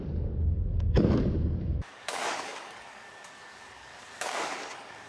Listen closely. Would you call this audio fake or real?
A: fake